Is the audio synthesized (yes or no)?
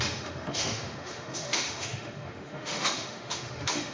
yes